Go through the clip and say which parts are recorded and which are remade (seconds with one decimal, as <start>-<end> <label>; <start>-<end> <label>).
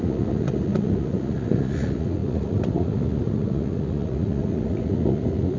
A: 0.0-5.6 remade